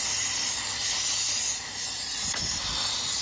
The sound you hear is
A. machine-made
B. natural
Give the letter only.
B